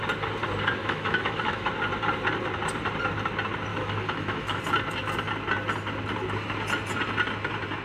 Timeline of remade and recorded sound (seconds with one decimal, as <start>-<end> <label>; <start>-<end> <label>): 0.0-0.8 recorded; 0.8-1.7 remade; 1.7-3.7 recorded; 3.7-4.6 remade; 4.6-7.8 recorded